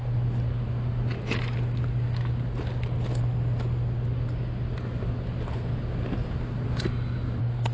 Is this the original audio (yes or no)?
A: yes